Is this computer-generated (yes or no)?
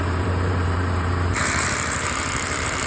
yes